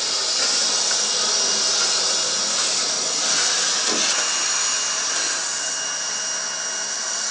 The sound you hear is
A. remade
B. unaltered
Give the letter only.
B